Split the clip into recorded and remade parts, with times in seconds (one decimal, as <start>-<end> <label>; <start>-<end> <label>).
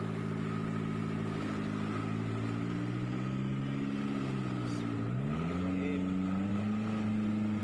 0.0-7.6 recorded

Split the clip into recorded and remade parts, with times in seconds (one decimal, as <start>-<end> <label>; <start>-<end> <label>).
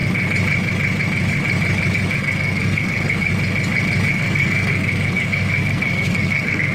0.0-2.2 recorded; 2.2-3.3 remade; 3.3-4.1 recorded; 4.1-6.7 remade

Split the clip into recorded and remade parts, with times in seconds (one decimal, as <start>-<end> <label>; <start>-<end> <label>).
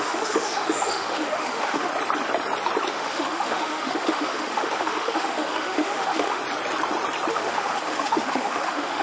0.0-1.9 remade; 1.9-2.9 recorded; 2.9-6.4 remade; 6.4-7.3 recorded; 7.3-9.0 remade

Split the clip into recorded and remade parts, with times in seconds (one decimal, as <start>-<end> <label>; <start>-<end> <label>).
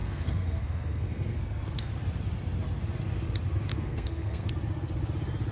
0.0-1.9 remade; 1.9-3.7 recorded; 3.7-4.5 remade; 4.5-5.5 recorded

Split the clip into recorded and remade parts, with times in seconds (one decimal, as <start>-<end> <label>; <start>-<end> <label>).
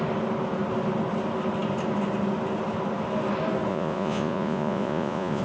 0.0-3.7 recorded; 3.7-5.4 remade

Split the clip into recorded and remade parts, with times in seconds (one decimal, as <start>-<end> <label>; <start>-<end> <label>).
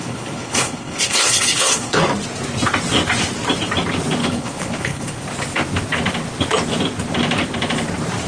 0.0-2.0 remade; 2.0-4.2 recorded; 4.2-5.2 remade; 5.2-8.3 recorded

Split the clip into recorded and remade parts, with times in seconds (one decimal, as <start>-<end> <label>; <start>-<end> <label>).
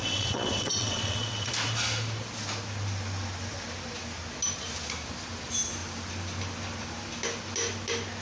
0.0-1.5 remade; 1.5-8.2 recorded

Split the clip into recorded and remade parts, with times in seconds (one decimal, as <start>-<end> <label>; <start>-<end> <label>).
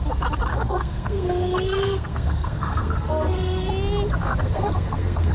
0.0-0.5 recorded; 0.5-3.7 remade; 3.7-4.4 recorded; 4.4-5.3 remade